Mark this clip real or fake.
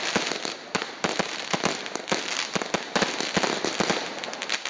real